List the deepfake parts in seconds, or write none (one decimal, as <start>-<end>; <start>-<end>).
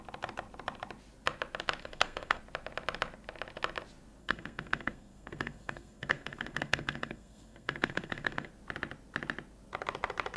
1.8-2.4; 4.2-8.5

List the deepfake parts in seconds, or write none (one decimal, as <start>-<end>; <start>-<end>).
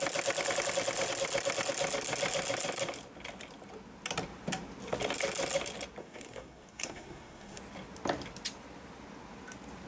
6.0-7.6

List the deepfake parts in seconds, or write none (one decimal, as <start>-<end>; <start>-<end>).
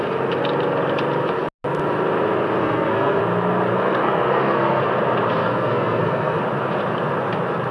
2.6-3.2; 3.7-4.8; 5.4-6.4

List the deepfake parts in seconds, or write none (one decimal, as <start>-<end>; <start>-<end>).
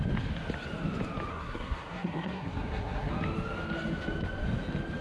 1.3-3.1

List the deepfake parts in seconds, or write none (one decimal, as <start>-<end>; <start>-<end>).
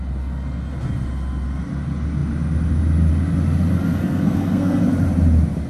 4.0-4.8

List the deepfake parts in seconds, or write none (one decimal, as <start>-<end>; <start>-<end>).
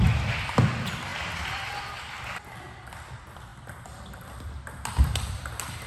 none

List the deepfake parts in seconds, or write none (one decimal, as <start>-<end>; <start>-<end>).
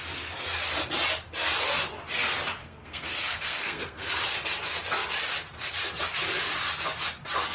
2.6-4.1